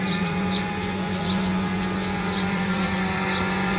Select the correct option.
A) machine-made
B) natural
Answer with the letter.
A